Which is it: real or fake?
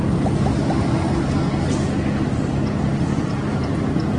real